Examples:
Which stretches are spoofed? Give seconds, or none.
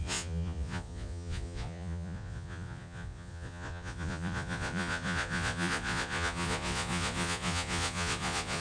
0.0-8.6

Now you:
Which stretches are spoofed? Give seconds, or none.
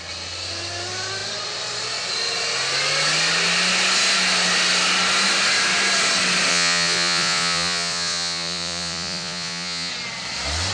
6.5-9.9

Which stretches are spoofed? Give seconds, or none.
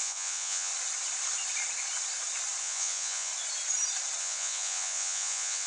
0.0-0.7; 2.6-3.3; 4.2-5.7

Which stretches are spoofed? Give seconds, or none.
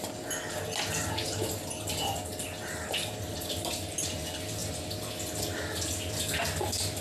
none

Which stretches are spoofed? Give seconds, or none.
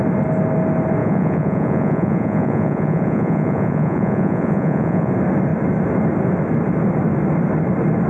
1.0-5.1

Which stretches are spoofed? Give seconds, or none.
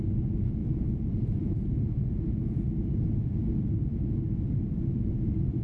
0.6-3.6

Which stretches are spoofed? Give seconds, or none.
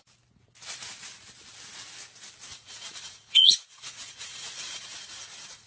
2.5-5.7